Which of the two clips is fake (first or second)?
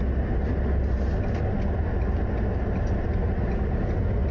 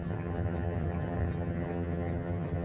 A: second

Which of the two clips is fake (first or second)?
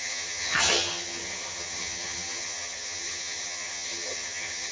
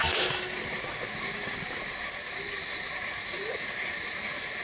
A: first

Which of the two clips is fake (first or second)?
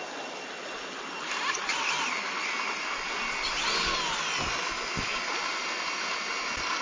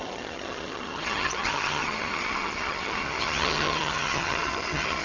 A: second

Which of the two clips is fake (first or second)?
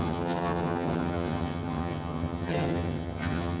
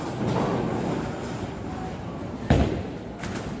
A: first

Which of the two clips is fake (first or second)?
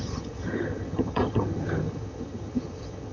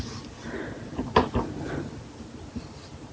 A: first